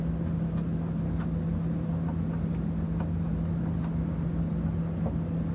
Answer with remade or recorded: recorded